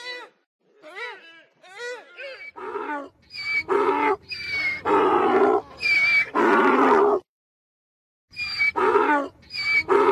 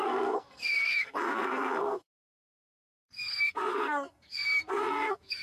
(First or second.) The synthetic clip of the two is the second